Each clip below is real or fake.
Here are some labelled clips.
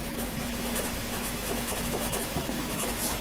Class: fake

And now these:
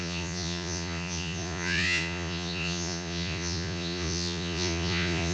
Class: fake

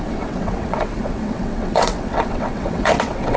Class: fake